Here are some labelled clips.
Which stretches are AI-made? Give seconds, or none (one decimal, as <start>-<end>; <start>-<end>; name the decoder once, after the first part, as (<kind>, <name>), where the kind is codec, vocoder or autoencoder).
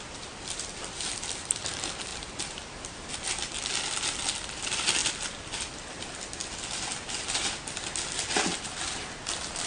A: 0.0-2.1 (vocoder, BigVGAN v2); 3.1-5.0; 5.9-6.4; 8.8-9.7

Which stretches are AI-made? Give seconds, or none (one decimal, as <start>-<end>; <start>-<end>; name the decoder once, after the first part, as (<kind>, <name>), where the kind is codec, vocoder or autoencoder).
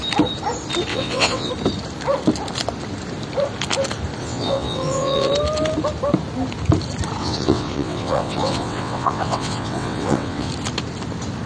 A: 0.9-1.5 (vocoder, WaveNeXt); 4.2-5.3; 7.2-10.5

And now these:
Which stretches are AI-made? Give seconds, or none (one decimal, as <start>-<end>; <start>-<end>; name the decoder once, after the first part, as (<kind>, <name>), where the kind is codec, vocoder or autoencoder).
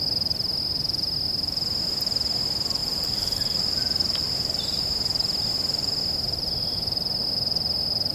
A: 2.8-4.8 (vocoder, BigVGAN v2)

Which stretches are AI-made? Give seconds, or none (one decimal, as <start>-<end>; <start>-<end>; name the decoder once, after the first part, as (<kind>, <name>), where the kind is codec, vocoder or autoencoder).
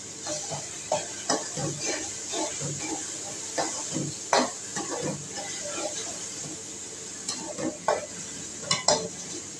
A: none